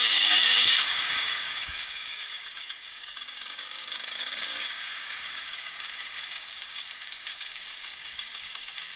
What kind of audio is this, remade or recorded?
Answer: remade